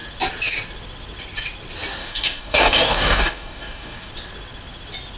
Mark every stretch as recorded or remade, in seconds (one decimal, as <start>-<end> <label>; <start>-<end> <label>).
0.0-2.0 recorded; 2.0-4.1 remade; 4.1-5.2 recorded